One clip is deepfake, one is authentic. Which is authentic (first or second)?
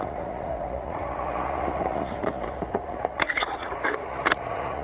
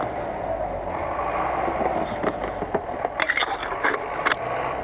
second